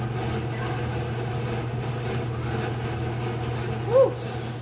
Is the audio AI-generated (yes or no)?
no